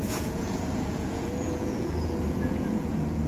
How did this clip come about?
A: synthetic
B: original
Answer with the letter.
A